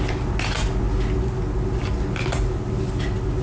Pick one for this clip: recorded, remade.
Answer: recorded